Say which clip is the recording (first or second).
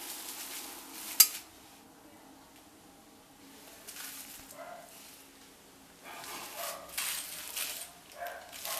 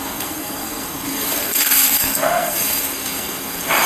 first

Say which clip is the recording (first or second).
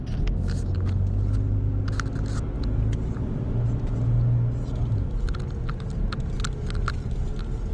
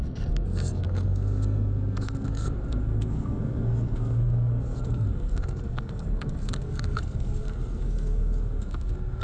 first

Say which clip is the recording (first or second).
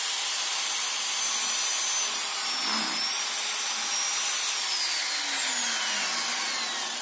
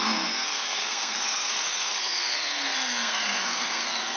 first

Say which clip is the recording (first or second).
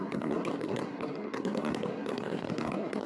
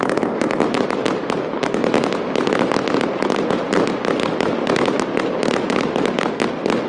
second